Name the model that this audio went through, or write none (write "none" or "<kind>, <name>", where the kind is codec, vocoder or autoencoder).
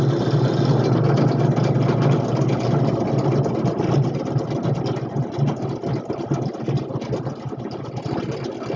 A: none